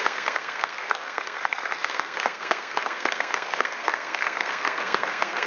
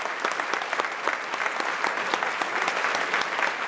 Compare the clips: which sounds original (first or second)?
second